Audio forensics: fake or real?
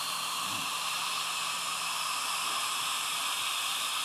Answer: fake